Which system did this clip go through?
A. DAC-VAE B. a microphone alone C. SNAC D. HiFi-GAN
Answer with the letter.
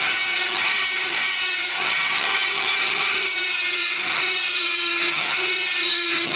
D